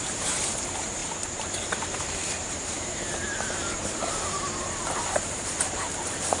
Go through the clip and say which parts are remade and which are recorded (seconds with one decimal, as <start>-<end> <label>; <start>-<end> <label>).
0.0-6.4 remade